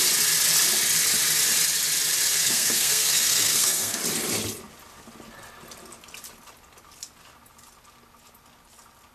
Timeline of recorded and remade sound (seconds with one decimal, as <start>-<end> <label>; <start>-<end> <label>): 0.0-2.3 recorded; 2.3-4.0 remade; 4.0-9.1 recorded